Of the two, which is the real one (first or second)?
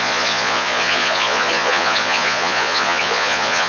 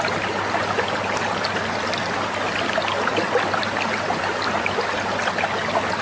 second